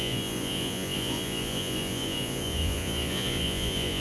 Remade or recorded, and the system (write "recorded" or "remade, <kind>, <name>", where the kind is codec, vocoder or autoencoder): remade, vocoder, Vocos